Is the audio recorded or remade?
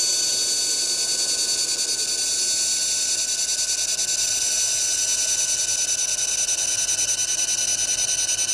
recorded